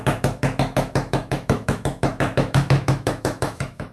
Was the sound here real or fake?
fake